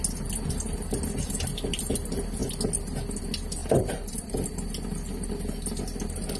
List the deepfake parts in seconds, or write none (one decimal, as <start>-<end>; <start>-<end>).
3.6-4.3